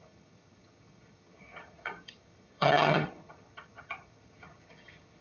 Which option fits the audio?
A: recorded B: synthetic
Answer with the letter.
B